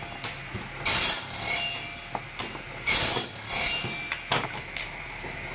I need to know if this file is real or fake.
real